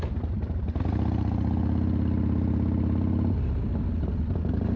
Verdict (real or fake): real